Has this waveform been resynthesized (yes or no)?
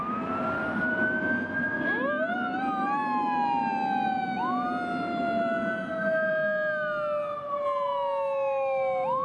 no